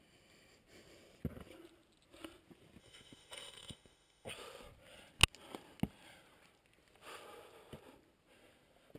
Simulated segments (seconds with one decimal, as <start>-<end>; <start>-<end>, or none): 2.8-4.3